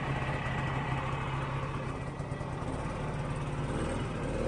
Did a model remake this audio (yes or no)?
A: no